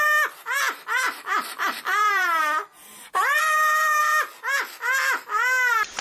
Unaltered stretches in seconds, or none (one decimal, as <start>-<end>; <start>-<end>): 0.0-0.4; 4.0-6.0